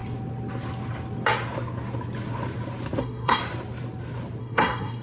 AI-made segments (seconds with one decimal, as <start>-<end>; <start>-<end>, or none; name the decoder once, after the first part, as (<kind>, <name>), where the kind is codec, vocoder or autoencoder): 3.0-3.4 (codec, SNAC); 4.4-5.0